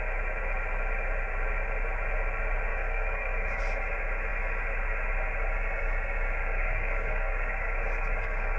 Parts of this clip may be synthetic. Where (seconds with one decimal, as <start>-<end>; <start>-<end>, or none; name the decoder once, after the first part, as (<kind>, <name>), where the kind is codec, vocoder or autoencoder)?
2.7-3.6 (codec, DAC); 6.4-8.6